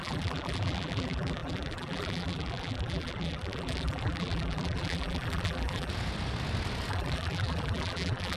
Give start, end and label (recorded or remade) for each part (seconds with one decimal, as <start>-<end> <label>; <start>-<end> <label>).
0.0-5.9 remade; 5.9-6.9 recorded; 6.9-8.4 remade

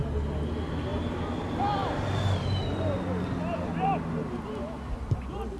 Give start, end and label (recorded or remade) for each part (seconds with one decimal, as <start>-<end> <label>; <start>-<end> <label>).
0.0-5.6 recorded

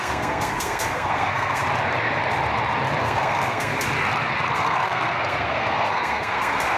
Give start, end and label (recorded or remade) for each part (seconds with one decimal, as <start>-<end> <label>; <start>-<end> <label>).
0.0-1.6 remade; 1.6-3.0 recorded; 3.0-3.7 remade; 3.7-4.5 recorded; 4.5-6.8 remade